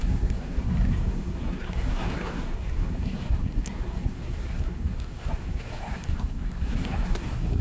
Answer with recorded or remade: remade